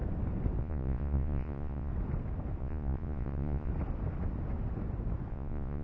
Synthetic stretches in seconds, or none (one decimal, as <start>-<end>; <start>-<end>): 0.6-1.9; 2.6-3.7; 5.3-5.8